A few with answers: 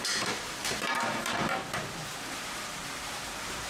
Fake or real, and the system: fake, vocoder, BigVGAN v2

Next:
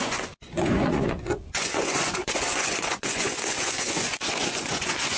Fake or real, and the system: fake, vocoder, Vocos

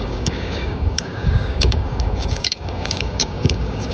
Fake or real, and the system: fake, codec, DAC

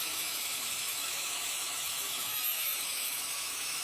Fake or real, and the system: fake, autoencoder, DAC-VAE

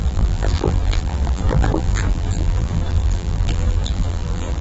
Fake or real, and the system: fake, vocoder, BigVGAN v2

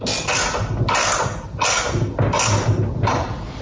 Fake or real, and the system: real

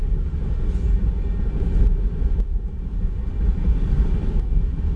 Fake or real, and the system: real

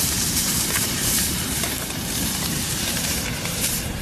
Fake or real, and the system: fake, vocoder, BigVGAN v2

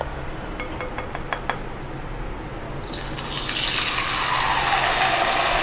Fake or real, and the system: real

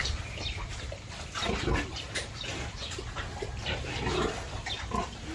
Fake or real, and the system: fake, vocoder, BigVGAN v2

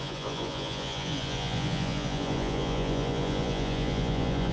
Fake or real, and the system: fake, vocoder, Vocos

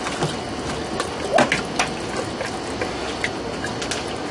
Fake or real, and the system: real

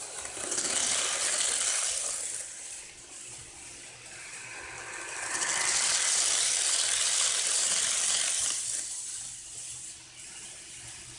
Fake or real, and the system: fake, vocoder, BigVGAN v2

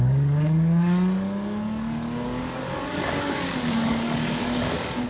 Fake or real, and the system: fake, codec, DAC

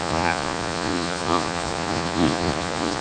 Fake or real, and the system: fake, vocoder, Vocos